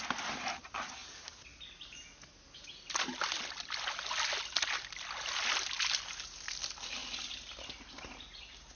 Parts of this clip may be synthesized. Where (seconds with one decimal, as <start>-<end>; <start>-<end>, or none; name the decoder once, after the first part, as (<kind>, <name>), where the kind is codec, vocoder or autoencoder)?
none